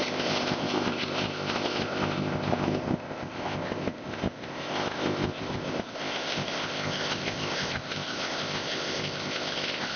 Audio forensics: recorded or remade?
remade